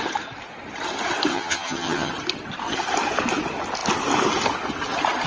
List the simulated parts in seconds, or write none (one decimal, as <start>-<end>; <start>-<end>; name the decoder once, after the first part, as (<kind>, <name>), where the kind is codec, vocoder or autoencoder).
1.3-2.1 (vocoder, HiFi-GAN)

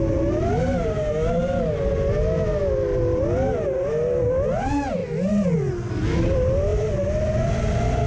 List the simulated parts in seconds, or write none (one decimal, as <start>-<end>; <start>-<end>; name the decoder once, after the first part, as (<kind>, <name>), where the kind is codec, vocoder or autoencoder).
none